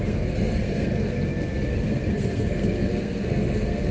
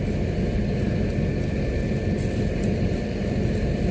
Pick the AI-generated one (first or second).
first